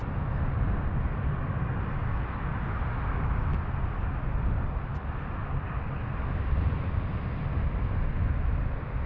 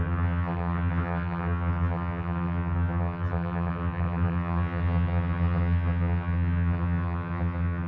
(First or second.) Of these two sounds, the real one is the first